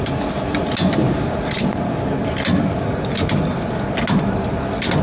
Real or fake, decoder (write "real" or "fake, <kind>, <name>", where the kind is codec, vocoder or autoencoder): real